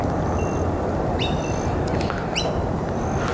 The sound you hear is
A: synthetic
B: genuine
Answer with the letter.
B